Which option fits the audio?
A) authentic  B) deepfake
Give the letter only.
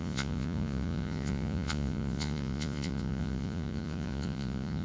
B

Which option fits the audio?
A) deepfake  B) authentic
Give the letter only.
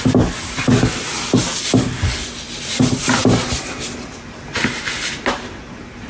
B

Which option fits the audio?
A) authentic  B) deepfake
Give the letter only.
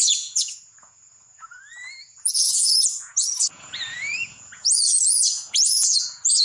B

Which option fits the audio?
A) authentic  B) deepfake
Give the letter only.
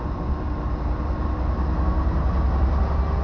A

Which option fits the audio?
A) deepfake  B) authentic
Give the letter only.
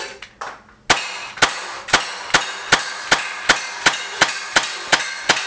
B